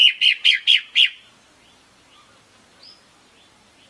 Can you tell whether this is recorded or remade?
recorded